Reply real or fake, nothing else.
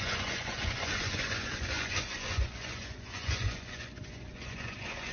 fake